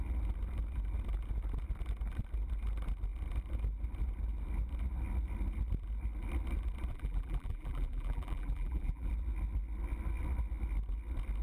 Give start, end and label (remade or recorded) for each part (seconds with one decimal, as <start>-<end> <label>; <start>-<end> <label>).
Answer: 0.0-6.9 recorded; 6.9-9.1 remade; 9.1-11.4 recorded